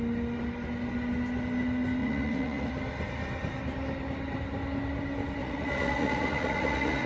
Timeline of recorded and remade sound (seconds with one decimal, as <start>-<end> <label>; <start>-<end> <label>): 0.0-2.0 recorded; 2.0-2.7 remade; 2.7-5.4 recorded; 5.4-7.1 remade